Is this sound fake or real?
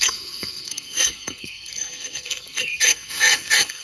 fake